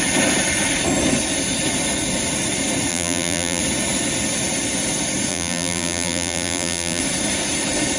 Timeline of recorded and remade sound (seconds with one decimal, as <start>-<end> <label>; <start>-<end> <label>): 0.0-2.9 recorded; 2.9-3.6 remade; 3.6-5.3 recorded; 5.3-7.0 remade; 7.0-8.0 recorded